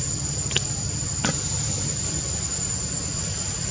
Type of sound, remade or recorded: recorded